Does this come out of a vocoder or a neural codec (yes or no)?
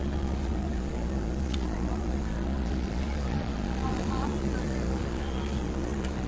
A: yes